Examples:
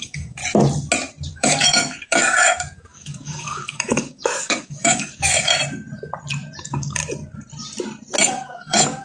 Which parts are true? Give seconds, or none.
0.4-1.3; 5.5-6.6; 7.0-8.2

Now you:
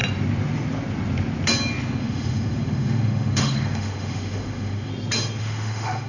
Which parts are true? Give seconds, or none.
0.0-2.0; 4.9-5.4